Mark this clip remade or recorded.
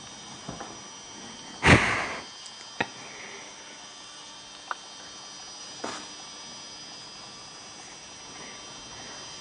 recorded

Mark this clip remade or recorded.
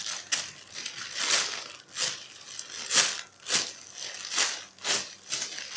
recorded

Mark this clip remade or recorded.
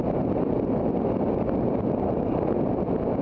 recorded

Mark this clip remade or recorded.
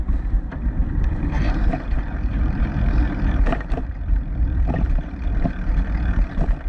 remade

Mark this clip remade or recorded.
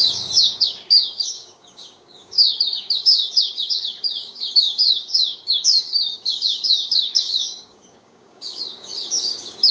remade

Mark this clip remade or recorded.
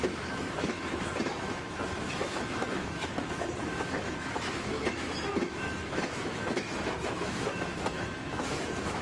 remade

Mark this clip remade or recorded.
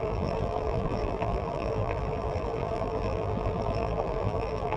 remade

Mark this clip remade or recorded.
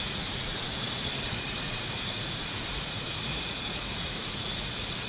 remade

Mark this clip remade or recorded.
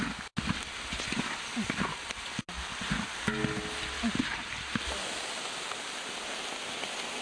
recorded